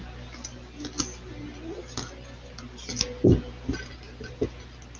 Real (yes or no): yes